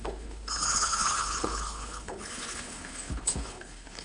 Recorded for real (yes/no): no